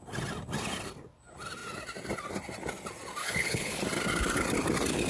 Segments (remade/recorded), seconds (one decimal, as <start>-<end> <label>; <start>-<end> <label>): 0.0-3.2 recorded; 3.2-3.8 remade; 3.8-5.1 recorded